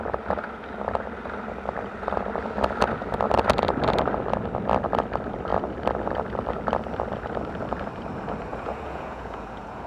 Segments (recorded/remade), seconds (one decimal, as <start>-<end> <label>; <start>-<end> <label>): 0.0-8.5 recorded; 8.5-9.9 remade